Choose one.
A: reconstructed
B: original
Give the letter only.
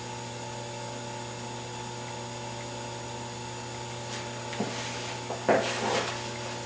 B